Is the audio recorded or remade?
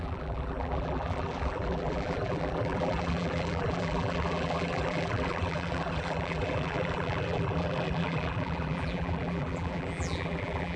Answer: remade